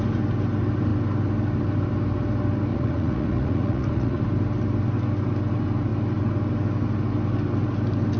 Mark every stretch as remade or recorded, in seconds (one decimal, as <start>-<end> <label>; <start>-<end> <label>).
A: 0.0-2.7 recorded; 2.7-4.2 remade; 4.2-8.2 recorded